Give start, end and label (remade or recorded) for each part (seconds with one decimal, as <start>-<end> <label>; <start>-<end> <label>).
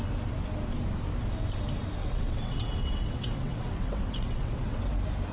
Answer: 0.0-2.0 recorded; 2.0-4.8 remade; 4.8-5.3 recorded